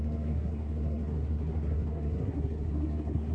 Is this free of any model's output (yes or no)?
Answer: no